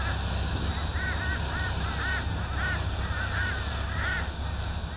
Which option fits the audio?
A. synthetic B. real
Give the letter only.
B